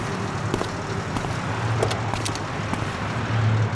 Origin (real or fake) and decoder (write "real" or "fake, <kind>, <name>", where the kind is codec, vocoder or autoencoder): real